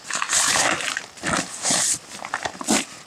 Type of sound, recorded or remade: recorded